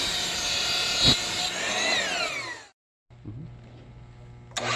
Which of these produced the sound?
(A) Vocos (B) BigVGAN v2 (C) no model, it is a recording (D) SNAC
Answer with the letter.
C